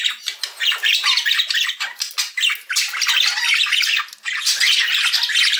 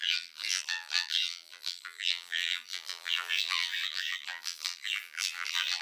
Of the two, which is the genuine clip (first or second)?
first